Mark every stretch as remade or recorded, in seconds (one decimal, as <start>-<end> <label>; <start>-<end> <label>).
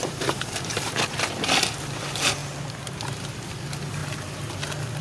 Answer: 0.0-0.8 remade; 0.8-5.0 recorded